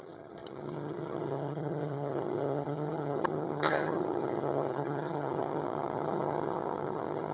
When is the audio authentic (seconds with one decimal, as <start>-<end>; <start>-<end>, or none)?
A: none